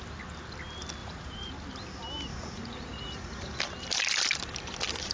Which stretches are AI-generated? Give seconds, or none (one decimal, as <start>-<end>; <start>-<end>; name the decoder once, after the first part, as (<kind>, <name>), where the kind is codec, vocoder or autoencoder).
1.0-1.5 (vocoder, Vocos); 2.3-3.6